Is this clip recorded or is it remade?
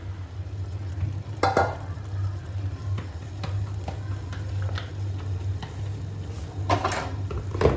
recorded